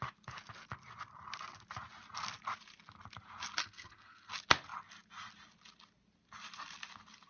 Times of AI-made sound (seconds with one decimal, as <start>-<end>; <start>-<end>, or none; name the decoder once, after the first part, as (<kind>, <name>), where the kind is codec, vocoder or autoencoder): 3.6-4.3 (codec, SNAC)